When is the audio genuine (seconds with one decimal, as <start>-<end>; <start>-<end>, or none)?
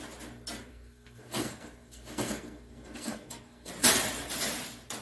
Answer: 0.0-0.7; 3.7-5.0